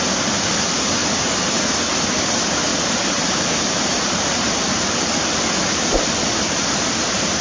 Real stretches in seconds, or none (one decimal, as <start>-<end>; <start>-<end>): 0.0-1.0; 1.6-2.7; 5.2-7.4